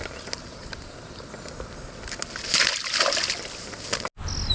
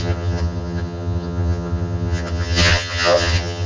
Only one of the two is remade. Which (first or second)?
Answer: second